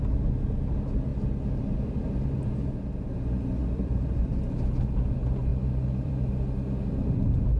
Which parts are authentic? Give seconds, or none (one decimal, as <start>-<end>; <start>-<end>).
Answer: 0.0-3.6; 4.3-5.5; 6.3-7.6